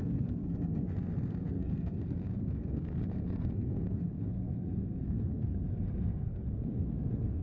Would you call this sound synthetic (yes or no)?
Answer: yes